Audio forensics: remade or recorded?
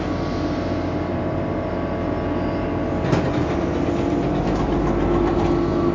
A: recorded